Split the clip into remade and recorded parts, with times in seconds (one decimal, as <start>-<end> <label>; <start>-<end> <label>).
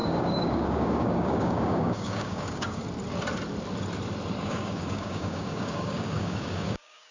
0.0-2.8 remade; 2.8-4.4 recorded; 4.4-7.1 remade